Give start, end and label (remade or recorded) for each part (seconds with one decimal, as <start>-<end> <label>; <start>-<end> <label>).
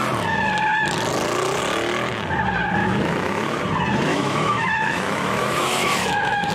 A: 0.0-2.8 recorded; 2.8-3.6 remade; 3.6-4.1 recorded; 4.1-6.5 remade